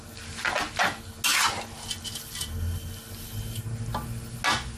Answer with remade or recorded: recorded